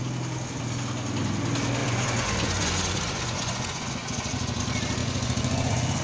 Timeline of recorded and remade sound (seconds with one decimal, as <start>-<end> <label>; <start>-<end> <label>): 0.0-1.8 recorded; 1.8-4.6 remade; 4.6-5.0 recorded; 5.0-6.0 remade